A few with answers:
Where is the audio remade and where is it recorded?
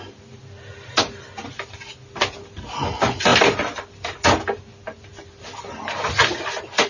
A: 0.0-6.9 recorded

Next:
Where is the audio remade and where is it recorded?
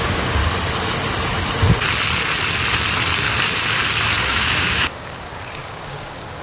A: 0.0-0.4 remade; 0.4-4.2 recorded; 4.2-6.4 remade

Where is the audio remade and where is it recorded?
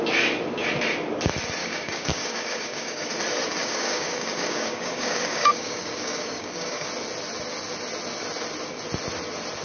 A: 0.0-1.6 recorded; 1.6-3.1 remade; 3.1-3.6 recorded; 3.6-6.9 remade; 6.9-9.6 recorded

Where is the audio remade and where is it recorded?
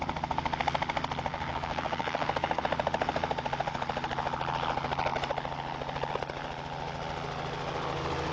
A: 0.0-1.3 recorded; 1.3-2.6 remade; 2.6-8.3 recorded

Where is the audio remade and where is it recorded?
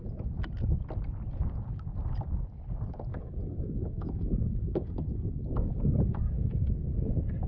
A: 0.0-3.1 recorded; 3.1-6.7 remade; 6.7-7.5 recorded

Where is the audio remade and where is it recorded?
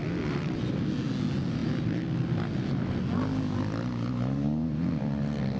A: 0.0-5.6 recorded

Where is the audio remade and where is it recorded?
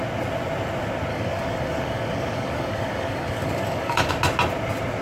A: 0.0-1.1 recorded; 1.1-4.1 remade; 4.1-5.0 recorded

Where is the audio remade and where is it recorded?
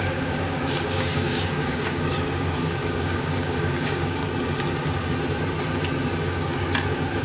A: 0.0-4.2 remade; 4.2-7.2 recorded